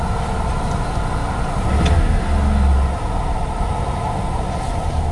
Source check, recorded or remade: recorded